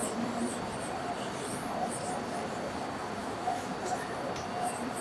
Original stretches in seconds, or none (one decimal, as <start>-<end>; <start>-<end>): 0.0-3.2; 3.7-5.0